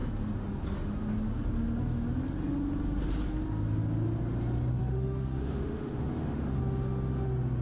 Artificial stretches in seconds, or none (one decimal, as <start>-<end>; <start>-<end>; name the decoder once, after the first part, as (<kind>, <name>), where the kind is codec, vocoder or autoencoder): 4.8-6.6 (autoencoder, DAC-VAE)